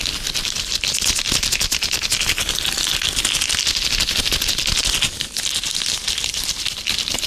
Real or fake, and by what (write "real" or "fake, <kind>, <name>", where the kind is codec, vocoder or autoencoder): real